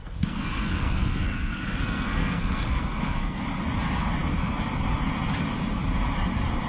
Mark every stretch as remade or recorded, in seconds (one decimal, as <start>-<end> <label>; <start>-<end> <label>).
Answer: 0.0-3.4 remade; 3.4-6.7 recorded